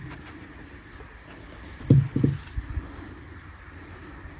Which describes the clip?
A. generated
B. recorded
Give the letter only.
A